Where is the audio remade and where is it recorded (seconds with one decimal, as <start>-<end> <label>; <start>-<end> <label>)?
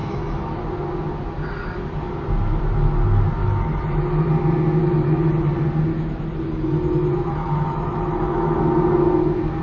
0.0-0.6 remade; 0.6-3.4 recorded; 3.4-4.3 remade; 4.3-4.8 recorded; 4.8-5.5 remade; 5.5-5.9 recorded; 5.9-8.6 remade; 8.6-9.6 recorded